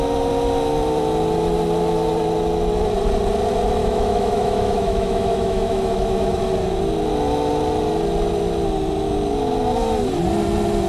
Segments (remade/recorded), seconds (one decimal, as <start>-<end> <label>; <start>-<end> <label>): 0.0-3.8 recorded; 3.8-6.4 remade; 6.4-10.9 recorded